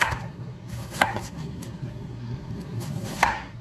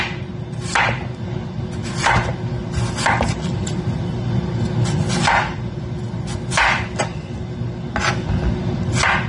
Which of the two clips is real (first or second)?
second